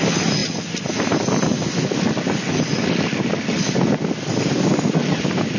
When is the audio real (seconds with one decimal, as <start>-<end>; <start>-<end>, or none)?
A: 0.0-5.6